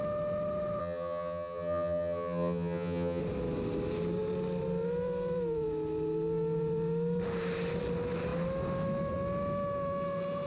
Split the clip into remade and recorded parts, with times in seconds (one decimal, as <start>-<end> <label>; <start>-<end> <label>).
0.0-0.8 recorded; 0.8-3.2 remade; 3.2-10.5 recorded